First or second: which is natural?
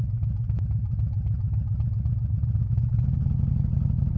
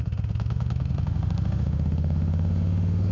first